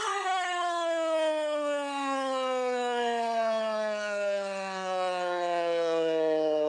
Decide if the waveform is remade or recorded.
remade